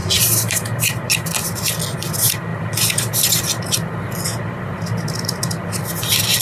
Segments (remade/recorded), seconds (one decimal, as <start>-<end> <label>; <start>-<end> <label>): 0.0-0.8 remade; 0.8-6.4 recorded